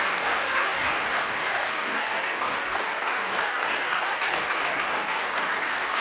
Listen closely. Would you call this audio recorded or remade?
remade